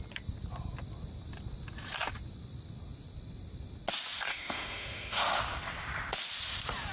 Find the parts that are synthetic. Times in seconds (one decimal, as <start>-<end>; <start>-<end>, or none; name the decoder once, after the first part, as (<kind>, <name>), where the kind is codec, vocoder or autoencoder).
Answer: 4.3-5.4 (autoencoder, DAC-VAE)